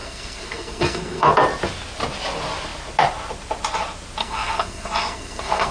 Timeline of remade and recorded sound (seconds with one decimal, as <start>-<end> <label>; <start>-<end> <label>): 0.0-1.3 remade; 1.3-4.2 recorded; 4.2-5.7 remade